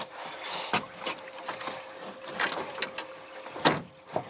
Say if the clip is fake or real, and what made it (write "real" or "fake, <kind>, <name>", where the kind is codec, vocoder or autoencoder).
real